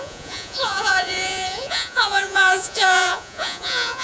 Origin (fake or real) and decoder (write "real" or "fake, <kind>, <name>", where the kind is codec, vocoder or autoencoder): fake, vocoder, Vocos